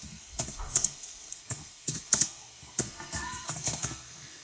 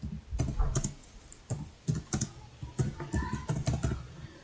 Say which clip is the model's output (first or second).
first